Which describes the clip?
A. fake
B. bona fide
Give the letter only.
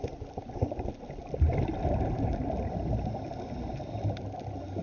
B